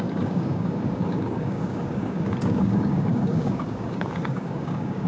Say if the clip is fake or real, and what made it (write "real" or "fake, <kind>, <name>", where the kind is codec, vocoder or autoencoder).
fake, codec, DAC